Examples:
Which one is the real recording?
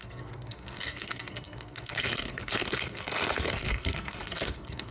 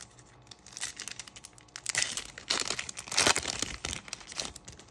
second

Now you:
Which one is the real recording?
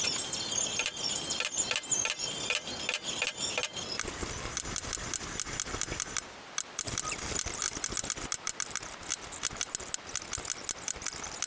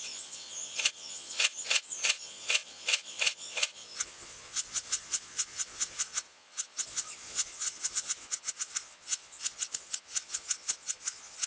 first